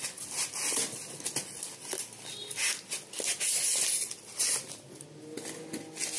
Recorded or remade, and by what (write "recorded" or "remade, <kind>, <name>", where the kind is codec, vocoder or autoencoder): recorded